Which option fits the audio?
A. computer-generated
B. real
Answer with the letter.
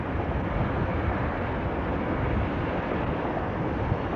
B